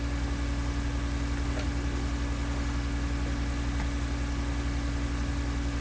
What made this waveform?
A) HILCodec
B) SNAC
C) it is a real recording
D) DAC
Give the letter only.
C